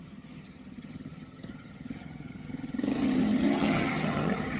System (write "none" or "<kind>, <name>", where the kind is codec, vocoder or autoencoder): vocoder, HiFi-GAN